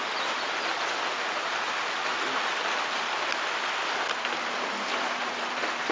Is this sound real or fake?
real